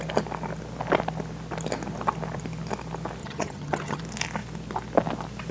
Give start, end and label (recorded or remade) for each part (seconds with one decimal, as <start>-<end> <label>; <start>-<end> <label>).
0.0-3.2 recorded; 3.2-4.0 remade; 4.0-5.5 recorded